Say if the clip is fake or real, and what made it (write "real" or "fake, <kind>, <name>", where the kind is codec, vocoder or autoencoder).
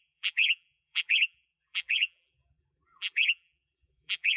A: fake, vocoder, BigVGAN v2